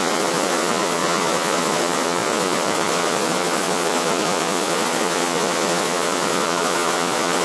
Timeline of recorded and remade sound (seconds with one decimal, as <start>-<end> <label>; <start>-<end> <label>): 0.0-7.4 remade